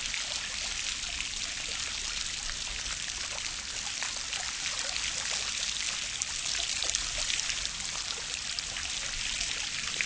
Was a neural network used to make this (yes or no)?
no